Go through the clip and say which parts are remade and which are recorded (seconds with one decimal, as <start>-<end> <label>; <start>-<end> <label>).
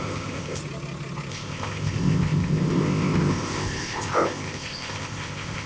0.0-0.6 remade; 0.6-1.3 recorded; 1.3-5.7 remade